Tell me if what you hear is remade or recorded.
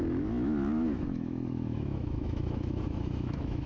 remade